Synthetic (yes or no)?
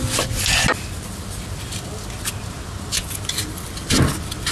no